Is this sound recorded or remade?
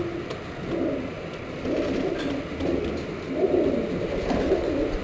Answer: recorded